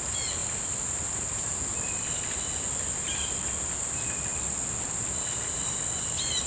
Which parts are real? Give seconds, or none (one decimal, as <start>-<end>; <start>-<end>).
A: 0.0-6.5